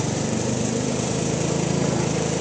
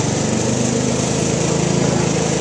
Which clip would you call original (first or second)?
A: second